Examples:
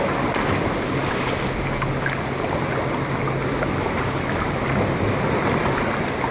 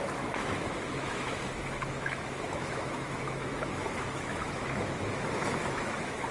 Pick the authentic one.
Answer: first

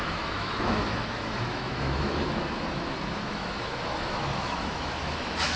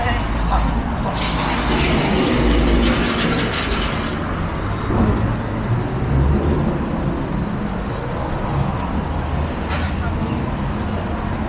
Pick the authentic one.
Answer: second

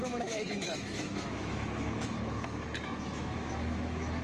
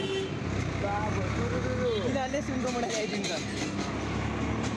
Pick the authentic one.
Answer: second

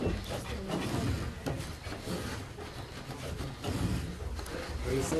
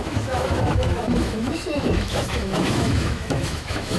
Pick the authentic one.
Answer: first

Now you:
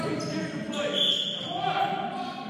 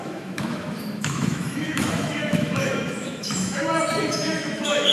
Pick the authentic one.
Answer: first